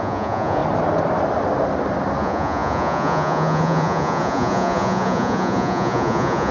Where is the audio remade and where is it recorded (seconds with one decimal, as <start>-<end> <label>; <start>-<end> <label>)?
0.0-0.6 remade; 0.6-2.2 recorded; 2.2-6.5 remade